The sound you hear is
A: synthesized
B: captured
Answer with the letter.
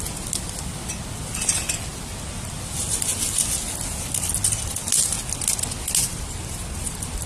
B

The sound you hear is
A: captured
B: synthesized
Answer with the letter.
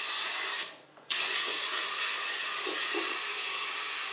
B